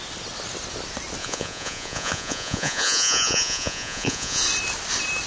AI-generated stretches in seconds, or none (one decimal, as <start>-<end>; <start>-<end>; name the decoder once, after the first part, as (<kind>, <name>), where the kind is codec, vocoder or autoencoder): 1.2-4.4 (vocoder, Vocos)